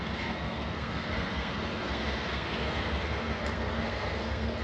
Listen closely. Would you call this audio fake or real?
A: fake